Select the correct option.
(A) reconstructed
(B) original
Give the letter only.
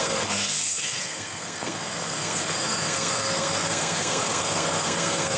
A